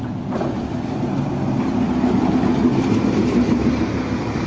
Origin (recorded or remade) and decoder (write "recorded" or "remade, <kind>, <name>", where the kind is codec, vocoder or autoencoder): recorded